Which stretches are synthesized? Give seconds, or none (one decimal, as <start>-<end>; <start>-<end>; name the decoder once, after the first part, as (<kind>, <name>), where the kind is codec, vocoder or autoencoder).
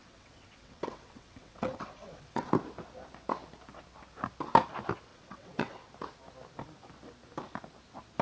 0.0-2.5 (vocoder, WaveNeXt); 5.1-5.9